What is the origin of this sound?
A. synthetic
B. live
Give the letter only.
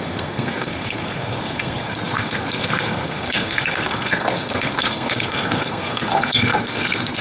A